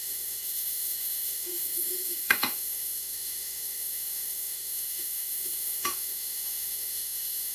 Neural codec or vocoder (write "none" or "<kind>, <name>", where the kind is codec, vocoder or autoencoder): autoencoder, DAC-VAE